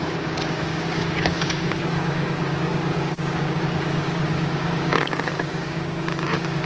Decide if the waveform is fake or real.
fake